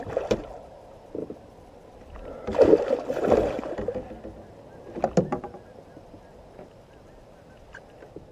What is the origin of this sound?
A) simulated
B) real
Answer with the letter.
B